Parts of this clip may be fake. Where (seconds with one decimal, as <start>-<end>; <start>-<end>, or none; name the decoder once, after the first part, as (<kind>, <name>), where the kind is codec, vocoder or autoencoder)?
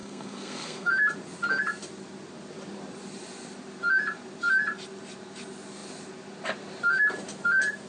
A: 0.0-0.9 (codec, SNAC)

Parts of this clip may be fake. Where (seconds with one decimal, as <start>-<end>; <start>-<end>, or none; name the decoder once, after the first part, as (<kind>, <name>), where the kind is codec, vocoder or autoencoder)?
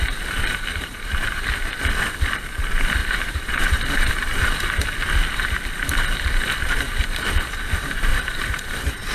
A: 0.7-1.4 (vocoder, BigVGAN v2); 3.0-4.1; 8.1-9.1